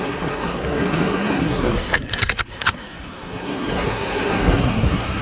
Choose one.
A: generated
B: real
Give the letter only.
A